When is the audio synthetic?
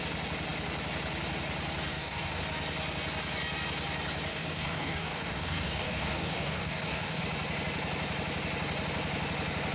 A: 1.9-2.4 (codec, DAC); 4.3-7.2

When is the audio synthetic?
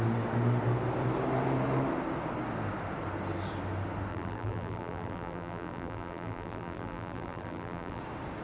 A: 4.1-8.0 (vocoder, BigVGAN v2)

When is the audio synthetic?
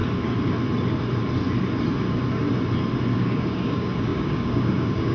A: 3.1-5.1 (codec, DAC)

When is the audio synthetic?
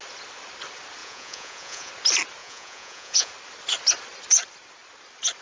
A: 1.0-1.9 (vocoder, Vocos); 2.4-3.3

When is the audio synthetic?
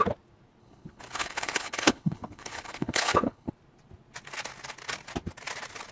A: 0.6-3.5 (codec, HILCodec)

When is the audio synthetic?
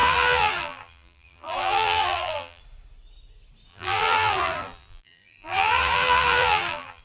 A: 0.0-2.6 (vocoder, BigVGAN v2); 3.7-7.0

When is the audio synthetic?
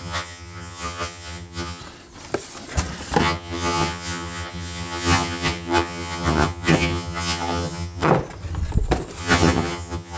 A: 0.0-1.8 (vocoder, HiFi-GAN); 3.2-8.1; 9.2-10.2